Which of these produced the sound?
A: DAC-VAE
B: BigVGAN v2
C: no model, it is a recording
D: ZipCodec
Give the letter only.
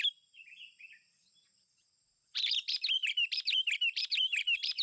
B